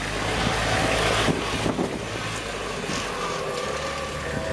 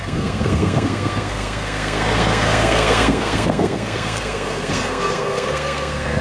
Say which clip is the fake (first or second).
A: second